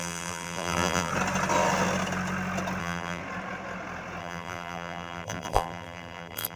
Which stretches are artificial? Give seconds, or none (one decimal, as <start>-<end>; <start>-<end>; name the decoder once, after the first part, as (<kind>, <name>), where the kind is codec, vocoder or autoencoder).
0.0-1.1 (vocoder, BigVGAN v2); 2.8-3.2; 4.2-6.6